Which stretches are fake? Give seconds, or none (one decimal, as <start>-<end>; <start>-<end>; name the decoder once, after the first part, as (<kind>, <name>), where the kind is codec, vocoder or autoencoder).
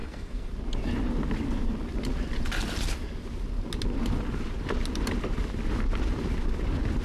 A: 0.0-0.5 (codec, SNAC)